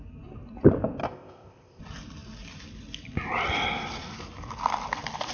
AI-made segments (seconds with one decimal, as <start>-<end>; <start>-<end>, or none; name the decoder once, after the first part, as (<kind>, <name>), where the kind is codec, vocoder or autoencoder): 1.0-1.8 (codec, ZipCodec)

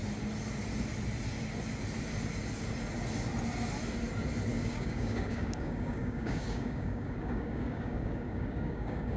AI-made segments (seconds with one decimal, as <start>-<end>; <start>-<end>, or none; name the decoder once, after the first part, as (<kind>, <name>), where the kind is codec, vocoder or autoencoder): 4.5-9.2 (codec, DAC)

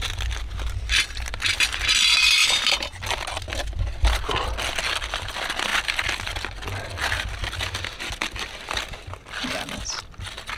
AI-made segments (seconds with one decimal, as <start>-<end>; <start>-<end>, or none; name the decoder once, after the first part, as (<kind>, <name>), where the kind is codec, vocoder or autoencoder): none